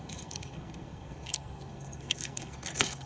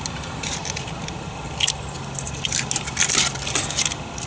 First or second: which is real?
second